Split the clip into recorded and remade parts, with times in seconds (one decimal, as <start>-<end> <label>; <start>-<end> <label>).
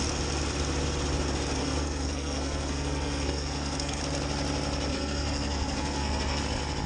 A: 0.0-1.6 recorded; 1.6-4.0 remade; 4.0-4.9 recorded; 4.9-6.4 remade; 6.4-6.9 recorded